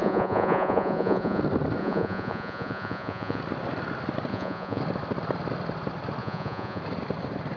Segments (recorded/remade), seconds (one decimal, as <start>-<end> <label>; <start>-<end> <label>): 0.0-1.4 remade; 1.4-1.8 recorded; 1.8-3.4 remade; 3.4-4.3 recorded; 4.3-4.8 remade; 4.8-6.2 recorded; 6.2-6.8 remade; 6.8-7.6 recorded